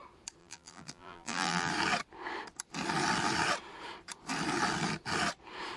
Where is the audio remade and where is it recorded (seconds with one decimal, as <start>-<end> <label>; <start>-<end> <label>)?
0.0-0.4 recorded; 0.4-1.7 remade; 1.7-5.8 recorded